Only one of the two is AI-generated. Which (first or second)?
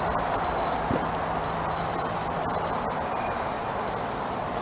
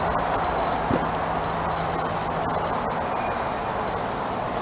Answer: first